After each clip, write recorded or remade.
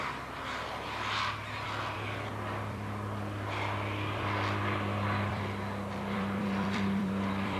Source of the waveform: remade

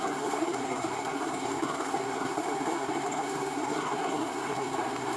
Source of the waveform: remade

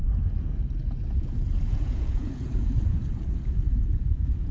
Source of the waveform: remade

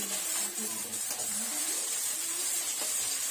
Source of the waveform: remade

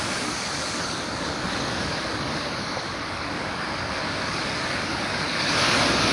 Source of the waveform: remade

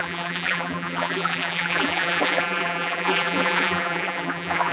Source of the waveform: remade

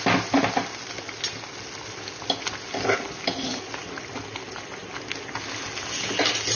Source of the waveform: recorded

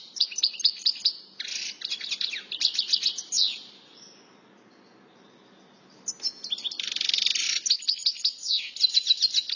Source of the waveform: recorded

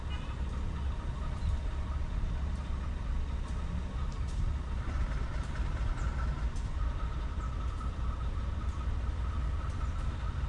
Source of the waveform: recorded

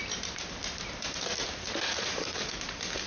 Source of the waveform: recorded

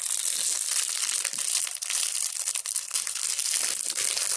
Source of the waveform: recorded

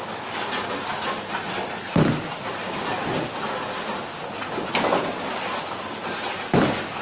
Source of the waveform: recorded